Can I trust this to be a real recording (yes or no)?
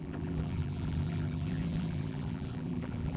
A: no